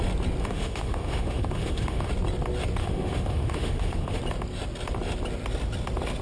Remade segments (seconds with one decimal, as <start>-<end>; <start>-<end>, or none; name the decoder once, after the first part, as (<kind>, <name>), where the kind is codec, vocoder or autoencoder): 0.4-2.1 (autoencoder, DAC-VAE); 2.8-4.2

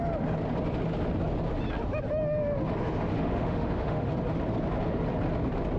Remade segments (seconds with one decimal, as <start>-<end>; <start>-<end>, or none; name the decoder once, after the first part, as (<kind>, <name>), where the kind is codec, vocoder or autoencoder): 3.1-4.1 (autoencoder, DAC-VAE)